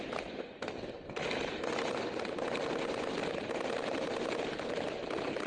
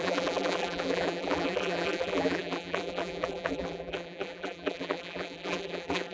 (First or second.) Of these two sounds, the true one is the first